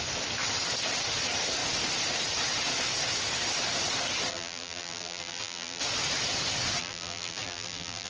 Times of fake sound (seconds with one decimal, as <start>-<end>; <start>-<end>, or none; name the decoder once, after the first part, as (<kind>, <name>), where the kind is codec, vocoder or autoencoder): 4.3-5.8 (vocoder, BigVGAN v2); 6.8-8.1